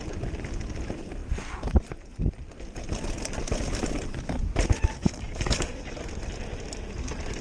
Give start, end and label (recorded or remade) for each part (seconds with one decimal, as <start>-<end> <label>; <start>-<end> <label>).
0.0-5.0 recorded; 5.0-5.8 remade; 5.8-7.4 recorded